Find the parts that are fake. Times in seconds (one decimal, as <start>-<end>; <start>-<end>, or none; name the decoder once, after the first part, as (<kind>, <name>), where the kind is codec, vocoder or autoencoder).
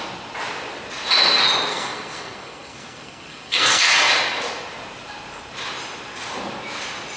1.7-3.9 (codec, SNAC)